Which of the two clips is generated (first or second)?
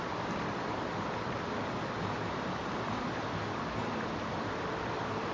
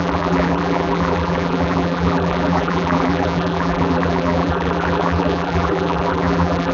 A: second